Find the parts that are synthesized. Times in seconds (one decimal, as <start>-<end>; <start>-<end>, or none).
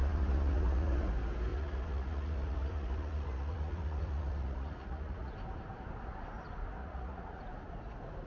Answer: 0.0-1.1; 1.5-5.3; 6.8-7.4